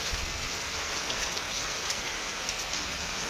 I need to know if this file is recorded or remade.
remade